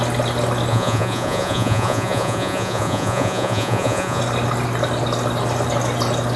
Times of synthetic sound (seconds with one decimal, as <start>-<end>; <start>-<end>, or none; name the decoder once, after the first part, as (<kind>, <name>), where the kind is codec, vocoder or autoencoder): 0.7-4.2 (vocoder, Vocos)